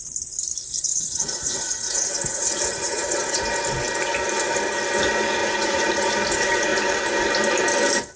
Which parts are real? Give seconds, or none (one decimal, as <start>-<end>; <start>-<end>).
0.0-0.9; 3.5-5.4; 6.1-8.2